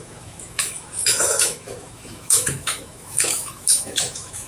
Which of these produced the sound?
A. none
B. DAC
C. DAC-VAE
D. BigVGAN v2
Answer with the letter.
C